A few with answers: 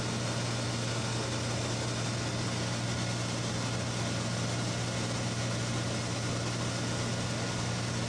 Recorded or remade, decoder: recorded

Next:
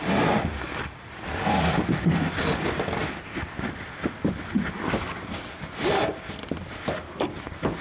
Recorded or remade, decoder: recorded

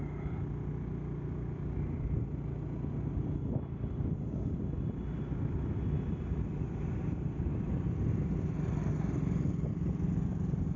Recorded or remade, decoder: recorded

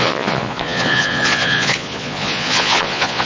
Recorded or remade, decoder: remade, vocoder, Vocos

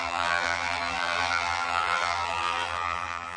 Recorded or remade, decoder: remade, vocoder, BigVGAN v2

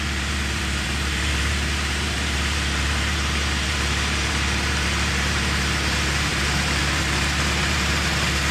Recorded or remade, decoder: remade, vocoder, BigVGAN v2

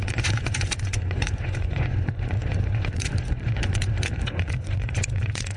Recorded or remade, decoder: remade, vocoder, Vocos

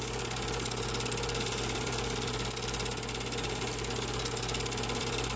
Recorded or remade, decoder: remade, vocoder, BigVGAN v2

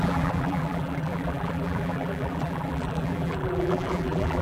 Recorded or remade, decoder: remade, vocoder, BigVGAN v2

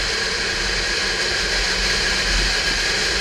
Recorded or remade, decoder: recorded